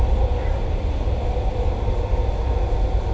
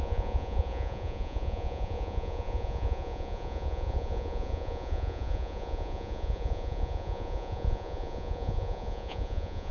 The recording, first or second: first